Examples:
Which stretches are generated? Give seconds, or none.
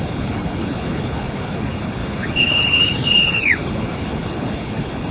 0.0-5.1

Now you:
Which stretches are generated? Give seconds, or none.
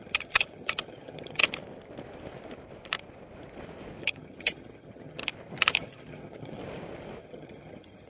0.0-1.4; 4.0-5.2; 5.8-6.6; 7.2-8.1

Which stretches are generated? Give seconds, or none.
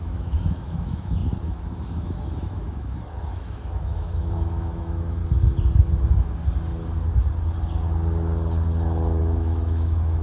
0.0-5.2; 9.2-10.2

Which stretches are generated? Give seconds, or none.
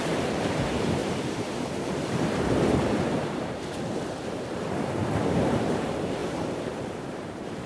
0.0-7.7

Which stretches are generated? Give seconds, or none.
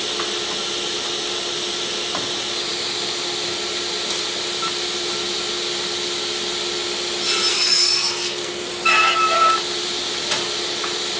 7.5-8.7